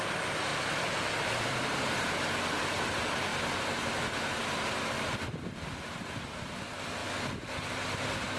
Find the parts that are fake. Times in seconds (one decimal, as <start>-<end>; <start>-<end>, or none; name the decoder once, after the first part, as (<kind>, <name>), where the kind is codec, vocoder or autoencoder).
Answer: 0.0-0.5 (vocoder, BigVGAN v2); 1.4-3.3; 4.4-7.0